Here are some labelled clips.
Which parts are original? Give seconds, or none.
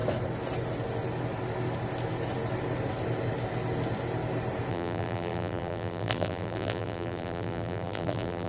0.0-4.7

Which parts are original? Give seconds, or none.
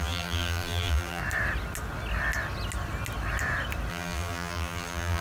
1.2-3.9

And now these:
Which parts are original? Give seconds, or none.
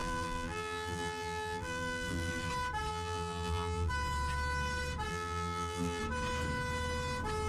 2.5-2.9; 3.9-5.1; 6.0-7.5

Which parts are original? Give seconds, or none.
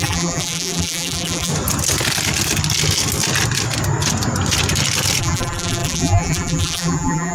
1.5-5.2